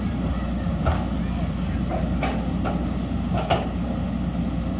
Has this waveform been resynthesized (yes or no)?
no